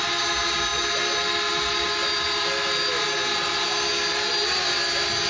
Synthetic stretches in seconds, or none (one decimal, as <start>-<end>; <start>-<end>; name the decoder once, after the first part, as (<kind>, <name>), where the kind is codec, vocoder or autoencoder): none